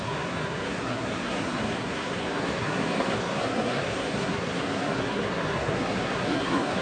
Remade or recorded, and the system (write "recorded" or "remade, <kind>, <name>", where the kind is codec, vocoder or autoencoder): remade, codec, SNAC